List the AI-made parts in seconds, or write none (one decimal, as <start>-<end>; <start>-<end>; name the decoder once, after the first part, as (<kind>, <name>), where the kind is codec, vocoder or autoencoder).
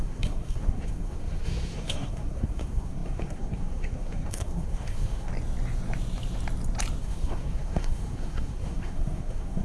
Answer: 0.0-5.3 (codec, SNAC); 7.0-9.6